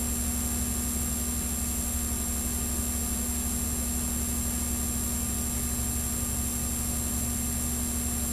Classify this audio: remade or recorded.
recorded